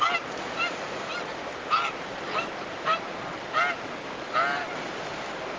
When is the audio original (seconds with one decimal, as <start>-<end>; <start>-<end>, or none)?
0.0-1.4; 3.2-5.6

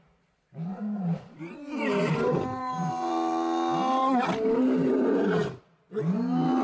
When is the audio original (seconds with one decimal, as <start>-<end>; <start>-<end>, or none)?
0.0-0.7; 2.9-4.0; 5.6-6.6